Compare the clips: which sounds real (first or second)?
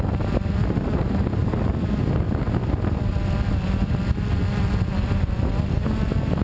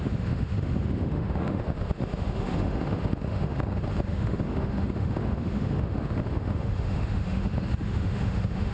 first